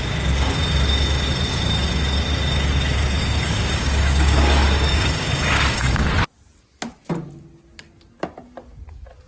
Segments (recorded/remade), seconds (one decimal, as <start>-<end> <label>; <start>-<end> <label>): 0.0-3.2 recorded; 3.2-6.1 remade; 6.1-9.3 recorded